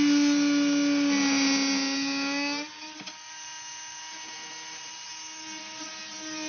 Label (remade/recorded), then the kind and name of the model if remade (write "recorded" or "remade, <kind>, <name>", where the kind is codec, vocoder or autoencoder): recorded